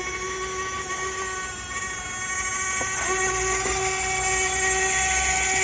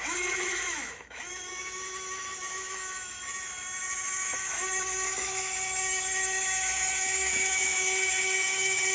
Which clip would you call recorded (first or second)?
first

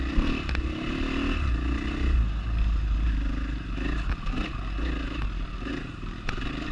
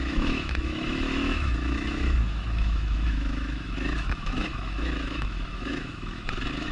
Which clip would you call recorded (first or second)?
first